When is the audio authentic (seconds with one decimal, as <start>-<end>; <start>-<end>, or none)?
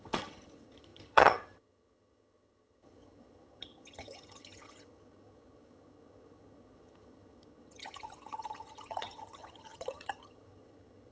none